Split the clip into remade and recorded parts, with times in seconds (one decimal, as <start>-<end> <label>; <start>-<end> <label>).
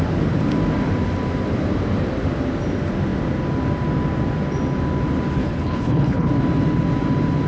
0.0-5.4 recorded; 5.4-6.3 remade; 6.3-7.5 recorded